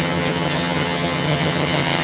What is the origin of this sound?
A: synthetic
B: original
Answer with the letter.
A